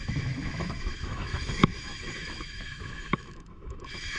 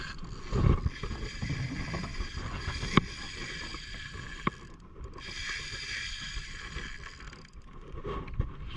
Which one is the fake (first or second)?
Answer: first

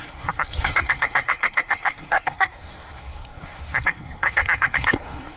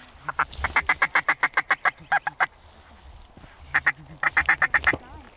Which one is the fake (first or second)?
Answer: first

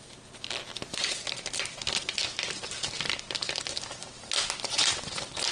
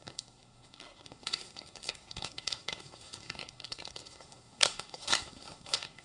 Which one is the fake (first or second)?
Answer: second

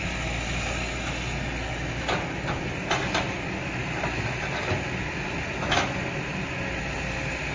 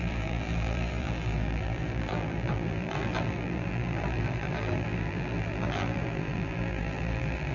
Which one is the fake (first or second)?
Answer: second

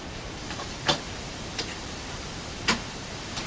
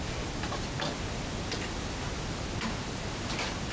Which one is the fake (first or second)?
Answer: first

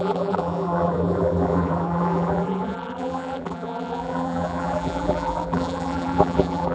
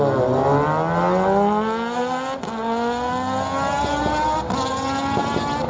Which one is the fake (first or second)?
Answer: first